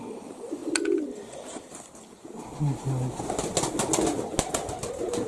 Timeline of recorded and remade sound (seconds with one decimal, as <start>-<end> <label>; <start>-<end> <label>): 0.0-5.3 recorded